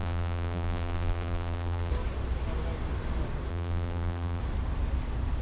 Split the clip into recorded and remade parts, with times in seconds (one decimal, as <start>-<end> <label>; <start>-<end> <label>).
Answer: 0.0-1.9 remade; 1.9-3.5 recorded; 3.5-4.4 remade; 4.4-5.4 recorded